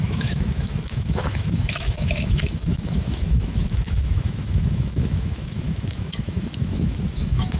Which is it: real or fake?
fake